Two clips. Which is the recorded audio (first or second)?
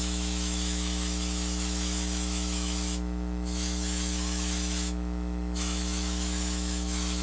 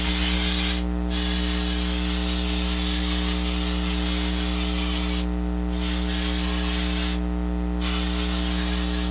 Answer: second